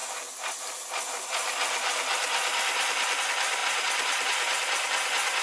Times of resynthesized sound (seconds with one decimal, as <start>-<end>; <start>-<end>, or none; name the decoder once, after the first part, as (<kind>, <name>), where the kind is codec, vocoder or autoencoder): none